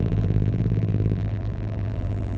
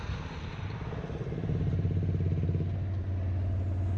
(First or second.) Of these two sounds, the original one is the second